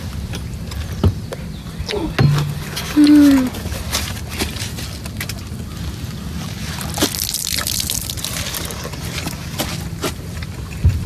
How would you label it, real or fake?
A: real